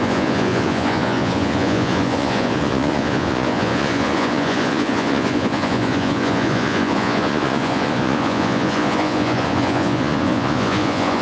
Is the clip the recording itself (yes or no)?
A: no